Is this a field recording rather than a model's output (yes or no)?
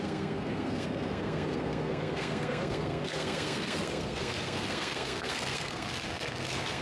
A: no